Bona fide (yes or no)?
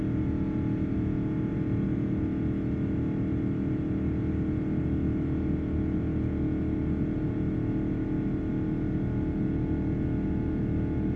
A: yes